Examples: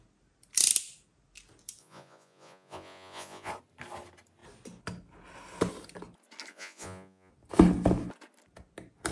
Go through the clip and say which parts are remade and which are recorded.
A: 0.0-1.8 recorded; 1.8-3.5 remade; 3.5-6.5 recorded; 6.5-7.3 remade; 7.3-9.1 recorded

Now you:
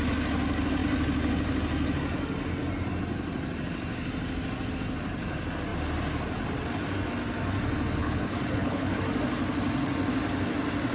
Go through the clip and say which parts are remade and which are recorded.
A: 0.0-8.0 recorded; 8.0-9.0 remade; 9.0-10.9 recorded

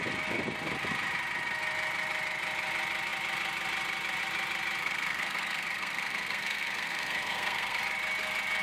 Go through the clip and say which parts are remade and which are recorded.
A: 0.0-4.8 recorded; 4.8-7.8 remade; 7.8-8.6 recorded